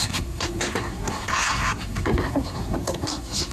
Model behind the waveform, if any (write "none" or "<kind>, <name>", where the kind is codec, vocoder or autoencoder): codec, SNAC